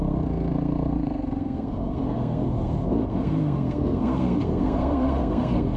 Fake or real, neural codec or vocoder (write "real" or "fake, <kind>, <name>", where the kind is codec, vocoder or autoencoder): fake, codec, SNAC